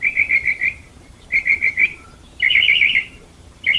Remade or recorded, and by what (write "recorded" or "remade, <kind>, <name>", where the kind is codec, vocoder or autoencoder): remade, vocoder, BigVGAN v2